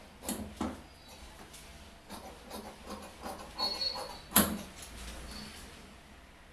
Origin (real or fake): real